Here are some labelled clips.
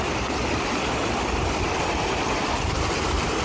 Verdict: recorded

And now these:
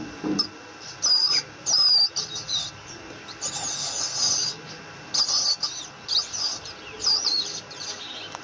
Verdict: recorded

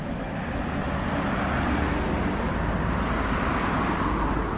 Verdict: recorded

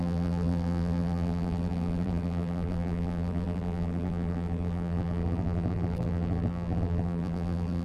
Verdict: remade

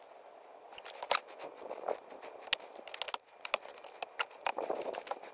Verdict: recorded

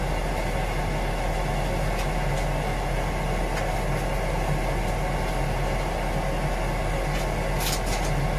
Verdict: recorded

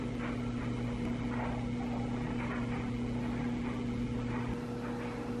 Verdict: recorded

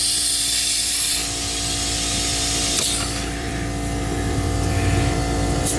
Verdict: remade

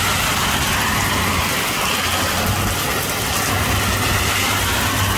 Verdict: recorded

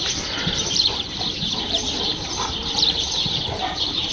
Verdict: remade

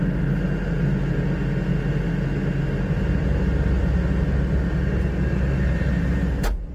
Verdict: recorded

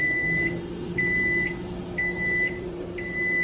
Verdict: remade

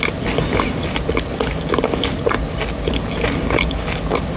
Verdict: recorded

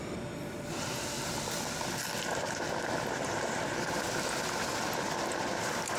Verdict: recorded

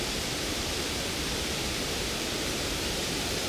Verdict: remade